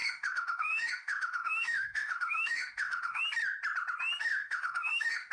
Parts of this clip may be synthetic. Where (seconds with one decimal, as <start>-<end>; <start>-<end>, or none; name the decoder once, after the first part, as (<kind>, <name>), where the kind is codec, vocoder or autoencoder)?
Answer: 0.0-3.2 (autoencoder, DAC-VAE); 4.2-5.3